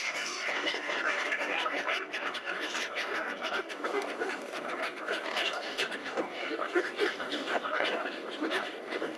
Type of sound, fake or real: fake